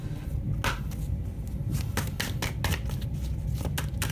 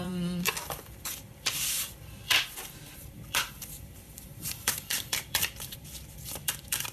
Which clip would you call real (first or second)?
first